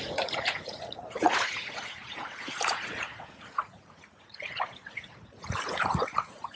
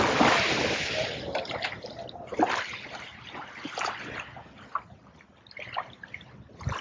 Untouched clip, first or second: second